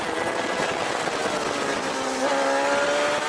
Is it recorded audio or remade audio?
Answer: recorded